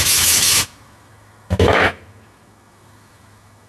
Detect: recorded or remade remade